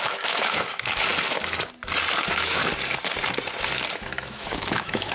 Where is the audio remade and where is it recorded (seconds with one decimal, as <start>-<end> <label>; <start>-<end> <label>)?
0.0-1.1 remade; 1.1-2.2 recorded; 2.2-2.6 remade; 2.6-4.0 recorded; 4.0-5.1 remade